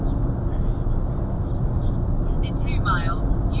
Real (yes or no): yes